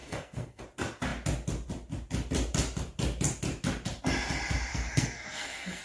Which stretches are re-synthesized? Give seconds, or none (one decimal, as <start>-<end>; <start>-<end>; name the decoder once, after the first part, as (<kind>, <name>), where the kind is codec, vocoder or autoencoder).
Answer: 0.0-0.6 (codec, SNAC); 4.7-5.8